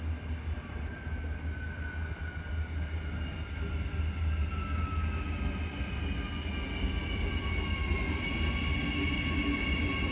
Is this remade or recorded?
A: recorded